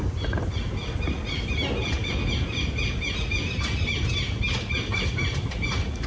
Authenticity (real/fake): real